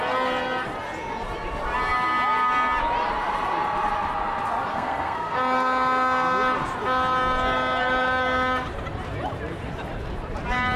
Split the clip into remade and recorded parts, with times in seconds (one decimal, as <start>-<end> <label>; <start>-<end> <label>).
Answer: 0.0-4.7 recorded; 4.7-5.3 remade; 5.3-10.8 recorded